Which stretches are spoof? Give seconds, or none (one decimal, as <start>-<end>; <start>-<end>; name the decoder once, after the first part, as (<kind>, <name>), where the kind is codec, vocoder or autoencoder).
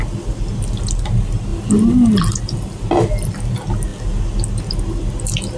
none